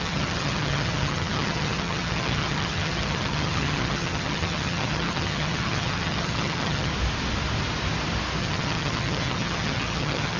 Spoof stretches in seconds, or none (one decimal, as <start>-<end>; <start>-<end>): 0.0-6.9; 8.4-10.4